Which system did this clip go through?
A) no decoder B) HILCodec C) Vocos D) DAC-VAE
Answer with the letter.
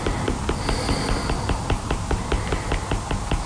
A